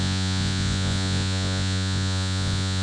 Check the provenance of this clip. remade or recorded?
remade